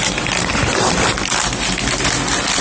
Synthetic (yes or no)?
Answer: no